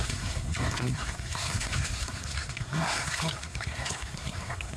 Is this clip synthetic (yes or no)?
yes